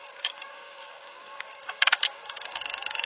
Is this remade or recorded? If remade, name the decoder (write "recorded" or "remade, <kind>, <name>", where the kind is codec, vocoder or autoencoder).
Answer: remade, codec, DAC